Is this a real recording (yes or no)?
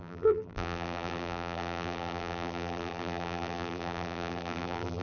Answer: no